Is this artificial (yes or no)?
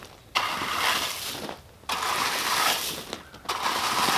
no